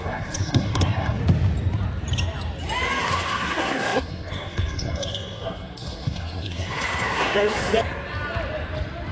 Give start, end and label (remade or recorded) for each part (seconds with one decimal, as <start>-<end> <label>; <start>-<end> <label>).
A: 0.0-1.2 remade; 1.2-3.0 recorded; 3.0-7.7 remade; 7.7-9.1 recorded